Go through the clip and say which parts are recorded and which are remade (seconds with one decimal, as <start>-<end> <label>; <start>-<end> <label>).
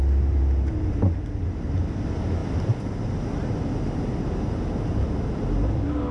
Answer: 0.0-6.1 recorded